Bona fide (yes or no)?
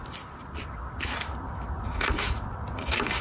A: yes